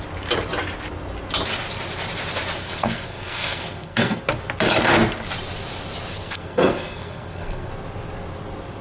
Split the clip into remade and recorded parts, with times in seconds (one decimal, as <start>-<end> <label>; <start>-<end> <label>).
0.0-2.6 recorded; 2.6-4.2 remade; 4.2-6.1 recorded; 6.1-7.7 remade; 7.7-8.8 recorded